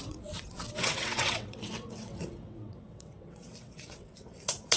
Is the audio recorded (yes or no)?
no